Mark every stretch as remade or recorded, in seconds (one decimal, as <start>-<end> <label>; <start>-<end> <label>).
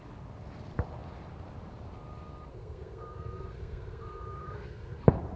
0.0-2.5 recorded; 2.5-5.0 remade; 5.0-5.4 recorded